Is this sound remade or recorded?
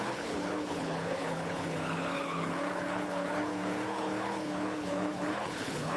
remade